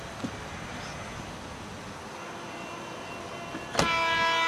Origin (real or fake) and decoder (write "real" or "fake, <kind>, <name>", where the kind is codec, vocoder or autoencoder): real